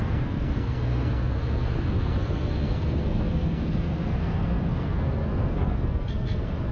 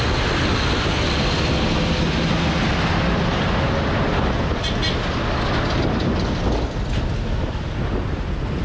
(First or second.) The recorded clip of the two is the second